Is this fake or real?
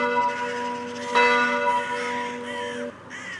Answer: real